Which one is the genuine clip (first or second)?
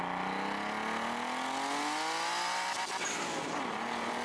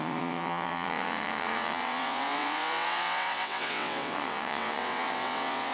first